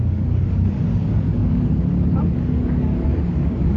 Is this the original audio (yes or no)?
no